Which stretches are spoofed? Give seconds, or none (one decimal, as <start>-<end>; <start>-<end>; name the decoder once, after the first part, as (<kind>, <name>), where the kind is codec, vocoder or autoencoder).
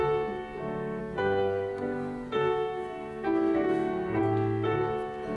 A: 1.0-4.2 (codec, SNAC)